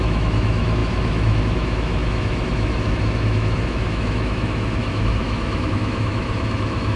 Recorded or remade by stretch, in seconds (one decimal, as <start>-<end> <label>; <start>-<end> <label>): 0.0-7.0 remade